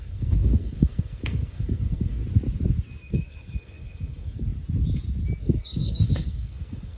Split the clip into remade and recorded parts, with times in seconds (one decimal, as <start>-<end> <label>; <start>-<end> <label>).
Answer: 0.0-2.2 remade; 2.2-3.0 recorded; 3.0-4.5 remade; 4.5-5.4 recorded; 5.4-7.0 remade